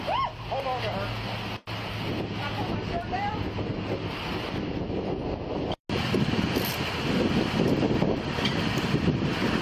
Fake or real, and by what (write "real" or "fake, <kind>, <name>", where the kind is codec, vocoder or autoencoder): real